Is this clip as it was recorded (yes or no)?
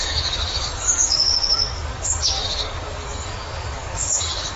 no